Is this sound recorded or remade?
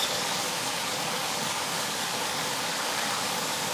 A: remade